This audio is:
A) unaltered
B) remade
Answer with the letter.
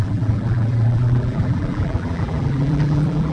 B